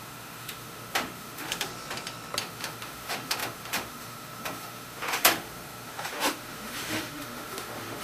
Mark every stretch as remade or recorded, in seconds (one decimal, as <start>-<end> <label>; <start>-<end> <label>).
0.0-1.7 remade; 1.7-2.4 recorded; 2.4-8.0 remade